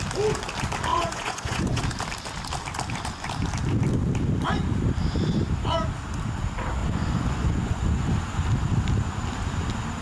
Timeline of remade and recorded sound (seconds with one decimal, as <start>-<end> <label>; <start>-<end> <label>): 0.0-0.9 recorded; 0.9-1.8 remade; 1.8-6.8 recorded; 6.8-8.1 remade; 8.1-10.0 recorded